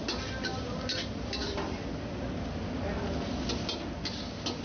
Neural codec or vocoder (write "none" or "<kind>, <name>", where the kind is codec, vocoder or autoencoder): none